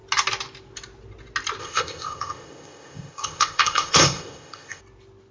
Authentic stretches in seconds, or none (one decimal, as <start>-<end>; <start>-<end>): 0.0-1.6; 4.8-5.3